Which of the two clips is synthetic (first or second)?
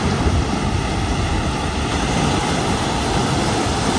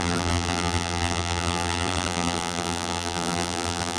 second